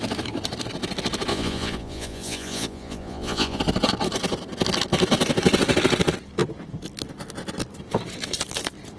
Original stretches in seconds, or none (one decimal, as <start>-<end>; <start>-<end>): 0.0-1.3; 3.6-9.0